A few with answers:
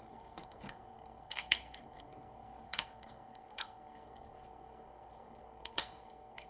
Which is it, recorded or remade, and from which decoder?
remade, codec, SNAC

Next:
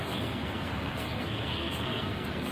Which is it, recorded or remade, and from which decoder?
remade, codec, SNAC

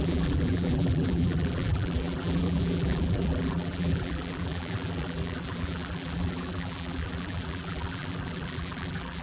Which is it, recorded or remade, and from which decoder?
remade, vocoder, BigVGAN v2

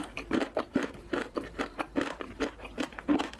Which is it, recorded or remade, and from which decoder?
remade, vocoder, BigVGAN v2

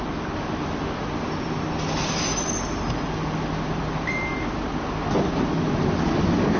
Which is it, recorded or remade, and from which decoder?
recorded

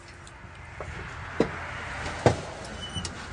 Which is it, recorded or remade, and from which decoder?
recorded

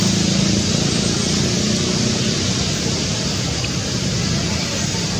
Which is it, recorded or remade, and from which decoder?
recorded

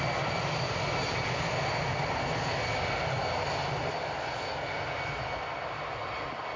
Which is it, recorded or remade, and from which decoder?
recorded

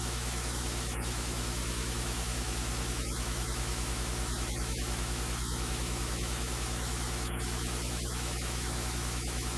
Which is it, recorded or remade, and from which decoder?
remade, autoencoder, DAC-VAE